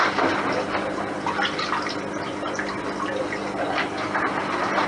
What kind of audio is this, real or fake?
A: real